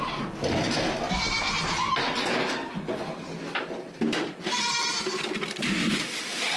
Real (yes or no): yes